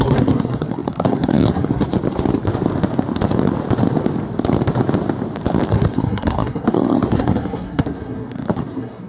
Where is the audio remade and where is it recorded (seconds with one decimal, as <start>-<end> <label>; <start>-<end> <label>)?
0.0-1.9 remade; 1.9-5.7 recorded; 5.7-9.1 remade